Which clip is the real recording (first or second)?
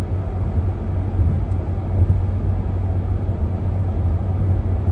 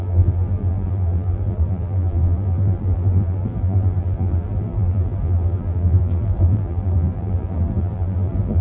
first